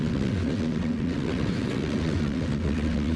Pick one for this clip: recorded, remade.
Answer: remade